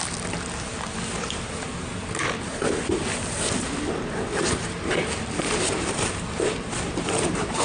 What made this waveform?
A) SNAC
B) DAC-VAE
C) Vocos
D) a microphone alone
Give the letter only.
D